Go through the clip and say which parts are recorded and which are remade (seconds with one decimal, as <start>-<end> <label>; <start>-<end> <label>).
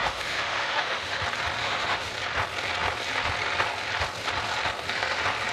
0.0-1.2 remade; 1.2-1.6 recorded; 1.6-2.1 remade; 2.1-5.5 recorded